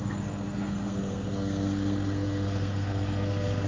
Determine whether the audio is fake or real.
fake